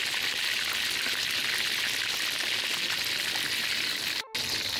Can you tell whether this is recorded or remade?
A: recorded